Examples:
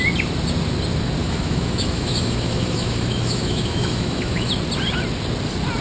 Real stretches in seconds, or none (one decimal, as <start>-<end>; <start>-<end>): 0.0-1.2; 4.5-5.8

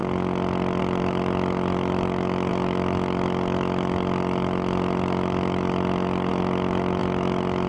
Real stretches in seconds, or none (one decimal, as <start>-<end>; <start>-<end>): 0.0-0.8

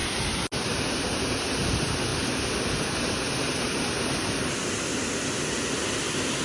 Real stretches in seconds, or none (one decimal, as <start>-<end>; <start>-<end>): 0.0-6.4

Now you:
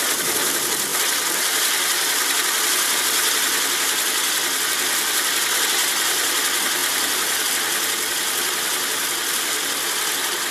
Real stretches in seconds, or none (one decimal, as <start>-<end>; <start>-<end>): 0.0-0.9; 3.0-6.8; 7.5-10.5

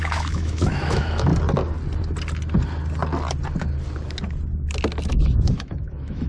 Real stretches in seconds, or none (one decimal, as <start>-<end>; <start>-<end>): 1.3-5.1

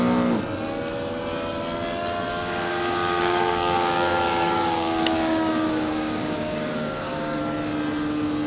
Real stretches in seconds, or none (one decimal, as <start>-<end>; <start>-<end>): 0.0-2.3; 7.4-8.5